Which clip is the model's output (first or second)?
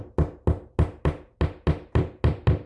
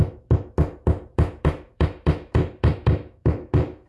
second